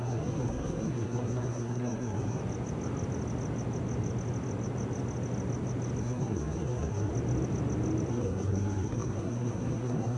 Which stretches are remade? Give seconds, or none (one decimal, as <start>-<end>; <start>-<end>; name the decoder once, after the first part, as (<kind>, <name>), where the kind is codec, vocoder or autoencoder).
0.0-2.4 (codec, SNAC); 6.0-7.1; 8.1-10.2